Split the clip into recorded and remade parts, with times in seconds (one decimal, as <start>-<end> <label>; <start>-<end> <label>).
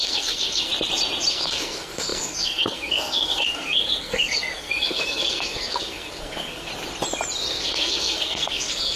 0.0-0.7 remade; 0.7-1.3 recorded; 1.3-6.7 remade; 6.7-7.5 recorded; 7.5-9.0 remade